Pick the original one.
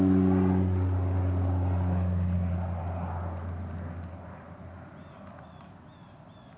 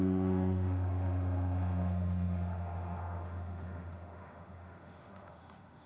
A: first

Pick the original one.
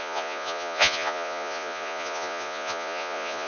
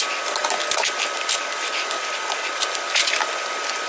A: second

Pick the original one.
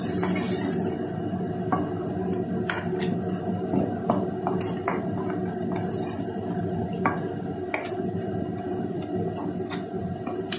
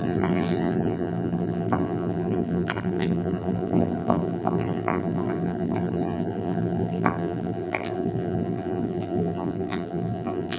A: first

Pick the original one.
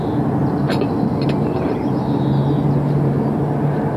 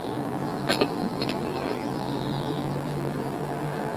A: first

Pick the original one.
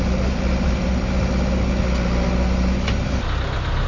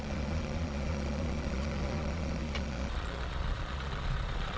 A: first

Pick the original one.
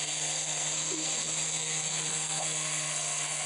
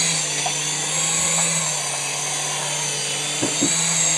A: second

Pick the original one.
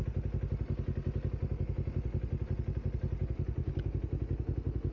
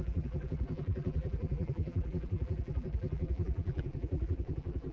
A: first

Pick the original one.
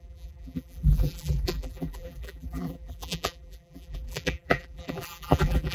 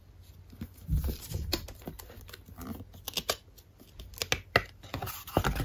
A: second